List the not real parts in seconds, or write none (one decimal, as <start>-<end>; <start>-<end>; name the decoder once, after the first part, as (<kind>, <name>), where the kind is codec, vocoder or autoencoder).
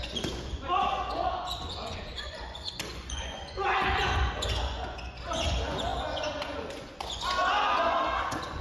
0.0-8.6 (vocoder, Vocos)